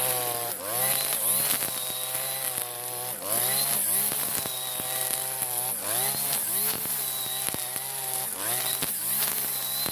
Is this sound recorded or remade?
recorded